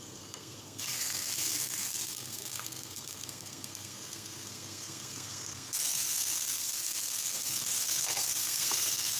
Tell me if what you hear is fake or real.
fake